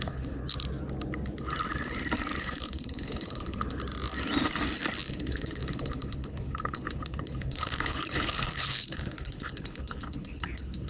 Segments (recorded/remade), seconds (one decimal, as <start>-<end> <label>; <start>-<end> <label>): 0.0-0.4 remade; 0.4-2.4 recorded; 2.4-3.8 remade; 3.8-5.1 recorded; 5.1-10.9 remade